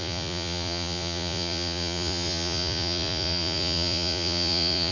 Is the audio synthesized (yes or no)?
yes